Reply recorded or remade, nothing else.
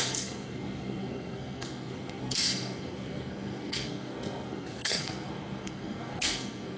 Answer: remade